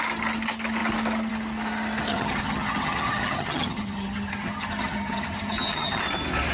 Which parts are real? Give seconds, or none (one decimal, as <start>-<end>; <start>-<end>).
0.0-2.1; 6.0-6.5